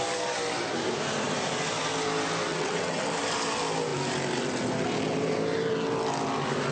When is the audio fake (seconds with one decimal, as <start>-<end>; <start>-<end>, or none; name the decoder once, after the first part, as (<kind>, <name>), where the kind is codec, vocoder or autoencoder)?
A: 2.5-3.0 (vocoder, WaveNeXt)